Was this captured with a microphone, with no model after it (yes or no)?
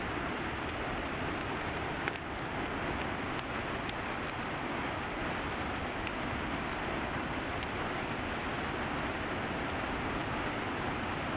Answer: yes